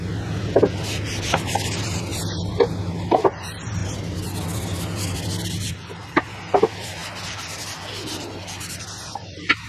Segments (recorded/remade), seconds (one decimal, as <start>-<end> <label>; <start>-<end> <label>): 0.0-2.1 remade; 2.1-2.7 recorded; 2.7-3.8 remade; 3.8-5.7 recorded; 5.7-9.7 remade